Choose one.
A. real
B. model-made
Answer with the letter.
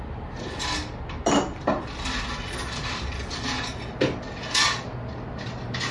A